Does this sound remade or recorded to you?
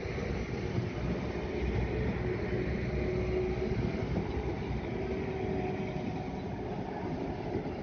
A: recorded